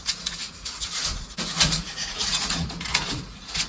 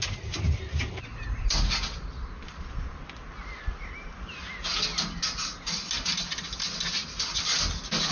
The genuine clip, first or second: second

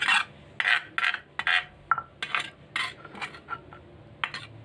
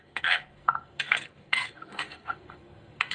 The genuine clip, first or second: first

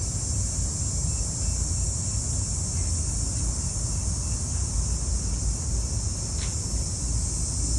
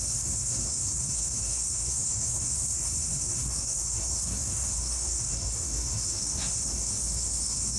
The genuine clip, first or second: first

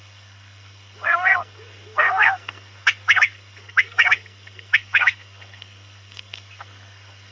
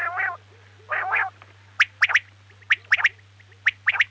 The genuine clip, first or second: second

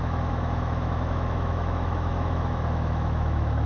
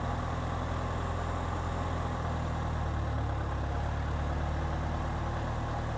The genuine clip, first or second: second